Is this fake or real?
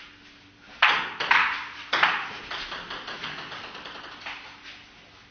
real